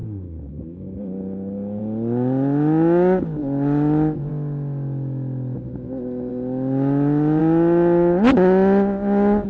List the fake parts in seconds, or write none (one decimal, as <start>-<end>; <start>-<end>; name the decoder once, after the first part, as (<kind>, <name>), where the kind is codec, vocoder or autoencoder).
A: 0.0-1.8 (codec, DAC)